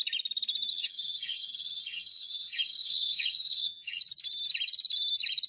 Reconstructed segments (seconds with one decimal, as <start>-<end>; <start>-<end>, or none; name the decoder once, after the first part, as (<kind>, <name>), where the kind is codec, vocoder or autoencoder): 0.7-4.0 (vocoder, HiFi-GAN)